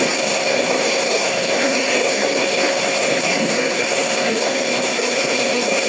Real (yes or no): no